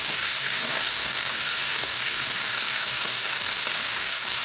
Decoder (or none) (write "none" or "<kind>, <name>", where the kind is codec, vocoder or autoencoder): codec, DAC